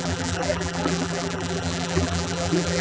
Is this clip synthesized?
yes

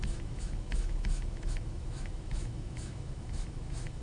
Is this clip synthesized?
yes